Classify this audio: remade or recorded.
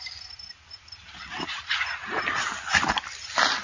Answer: recorded